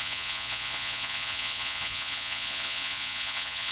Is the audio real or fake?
fake